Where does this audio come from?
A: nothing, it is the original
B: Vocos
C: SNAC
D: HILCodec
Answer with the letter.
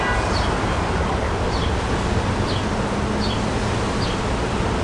A